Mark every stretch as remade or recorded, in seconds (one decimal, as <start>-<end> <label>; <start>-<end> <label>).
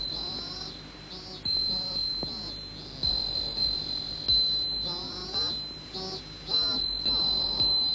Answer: 0.0-7.9 recorded